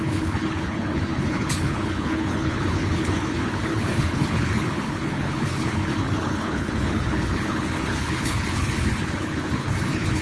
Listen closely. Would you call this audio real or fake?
fake